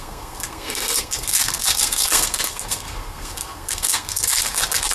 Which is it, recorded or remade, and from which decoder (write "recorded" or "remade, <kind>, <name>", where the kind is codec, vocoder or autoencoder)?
remade, codec, SNAC